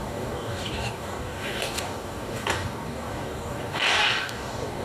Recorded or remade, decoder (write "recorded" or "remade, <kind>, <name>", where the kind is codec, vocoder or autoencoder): remade, codec, DAC